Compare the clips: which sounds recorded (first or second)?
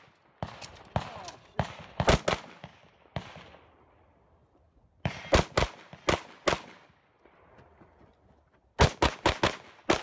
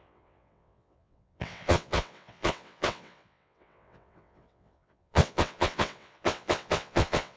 first